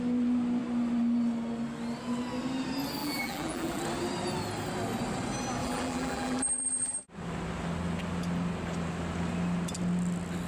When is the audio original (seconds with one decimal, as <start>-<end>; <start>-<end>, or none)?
0.0-3.0; 3.8-5.6; 7.0-10.5